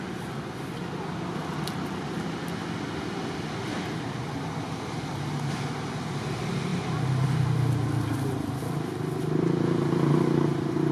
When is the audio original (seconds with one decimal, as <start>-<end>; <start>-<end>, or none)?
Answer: 0.0-10.9